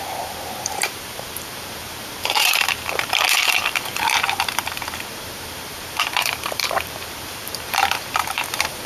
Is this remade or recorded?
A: remade